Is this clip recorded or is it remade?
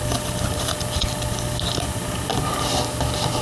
recorded